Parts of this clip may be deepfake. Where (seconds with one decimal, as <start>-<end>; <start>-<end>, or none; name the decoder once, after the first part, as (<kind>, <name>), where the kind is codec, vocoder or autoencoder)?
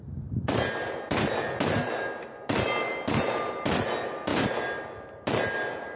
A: none